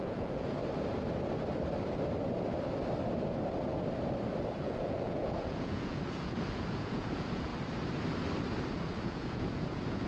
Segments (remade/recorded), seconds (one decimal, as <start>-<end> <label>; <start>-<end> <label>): 0.0-0.6 remade; 0.6-4.6 recorded; 4.6-7.5 remade; 7.5-8.8 recorded; 8.8-10.1 remade